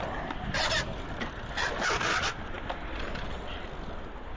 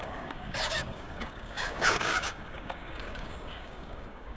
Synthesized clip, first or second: second